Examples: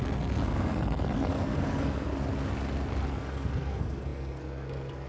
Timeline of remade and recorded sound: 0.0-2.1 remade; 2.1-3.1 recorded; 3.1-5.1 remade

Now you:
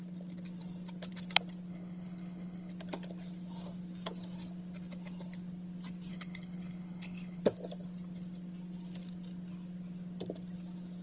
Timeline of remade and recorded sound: 0.0-1.7 recorded; 1.7-2.7 remade; 2.7-6.1 recorded; 6.1-7.4 remade; 7.4-11.0 recorded

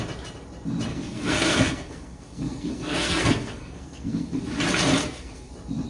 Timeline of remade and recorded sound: 0.0-0.9 recorded; 0.9-4.4 remade; 4.4-5.0 recorded; 5.0-5.5 remade; 5.5-5.9 recorded

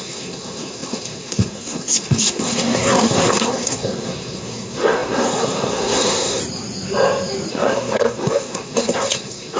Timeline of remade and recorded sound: 0.0-6.4 remade; 6.4-7.5 recorded; 7.5-9.6 remade

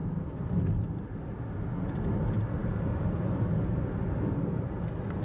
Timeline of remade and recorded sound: 0.0-5.2 recorded

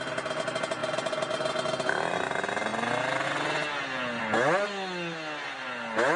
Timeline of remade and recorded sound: 0.0-6.2 recorded